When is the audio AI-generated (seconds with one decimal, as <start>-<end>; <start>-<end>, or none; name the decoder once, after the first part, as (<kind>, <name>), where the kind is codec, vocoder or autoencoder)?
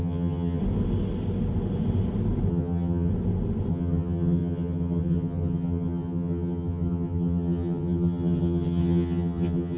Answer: 0.0-0.6 (vocoder, HiFi-GAN); 2.5-3.1; 3.7-9.8